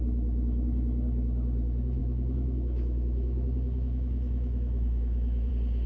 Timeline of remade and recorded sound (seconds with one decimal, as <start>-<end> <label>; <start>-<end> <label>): 0.0-2.0 recorded; 2.0-5.5 remade; 5.5-5.9 recorded